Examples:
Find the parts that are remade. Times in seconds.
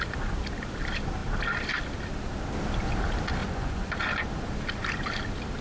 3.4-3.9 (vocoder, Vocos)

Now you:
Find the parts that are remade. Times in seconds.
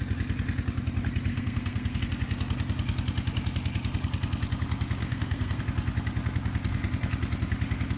1.3-2.0 (codec, SNAC); 5.0-5.6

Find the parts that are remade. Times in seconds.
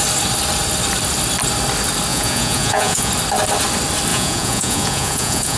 2.1-3.1 (vocoder, Vocos); 4.1-5.6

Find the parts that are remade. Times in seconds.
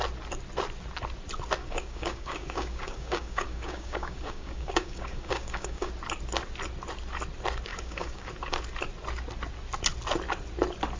1.6-5.9 (codec, DAC); 7.7-8.3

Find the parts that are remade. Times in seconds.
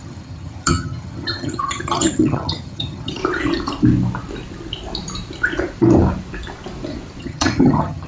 0.0-3.2 (vocoder, HiFi-GAN); 7.2-8.1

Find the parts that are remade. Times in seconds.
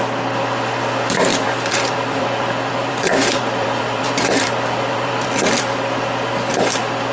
1.3-5.6 (vocoder, BigVGAN v2)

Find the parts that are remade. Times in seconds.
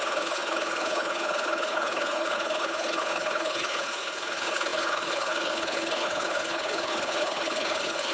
0.0-8.1 (codec, HILCodec)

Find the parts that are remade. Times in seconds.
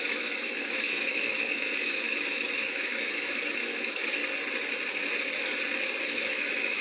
0.0-4.2 (autoencoder, DAC-VAE); 6.0-6.8